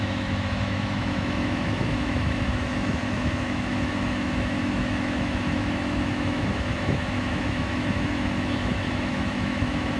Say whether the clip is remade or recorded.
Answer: remade